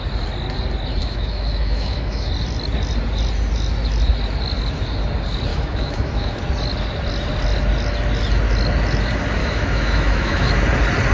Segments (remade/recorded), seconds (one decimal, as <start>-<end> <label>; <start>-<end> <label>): 0.0-1.0 recorded; 1.0-2.3 remade; 2.3-5.5 recorded; 5.5-6.4 remade; 6.4-9.4 recorded; 9.4-10.5 remade; 10.5-11.1 recorded